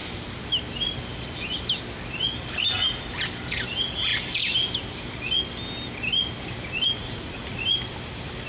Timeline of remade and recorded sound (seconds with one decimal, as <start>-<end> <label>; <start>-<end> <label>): 0.0-7.0 recorded; 7.0-7.6 remade; 7.6-8.5 recorded